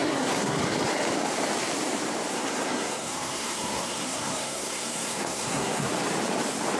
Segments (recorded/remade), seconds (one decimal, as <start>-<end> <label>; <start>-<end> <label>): 0.0-0.6 remade; 0.6-2.3 recorded; 2.3-5.9 remade; 5.9-6.8 recorded